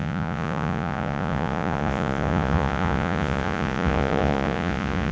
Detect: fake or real fake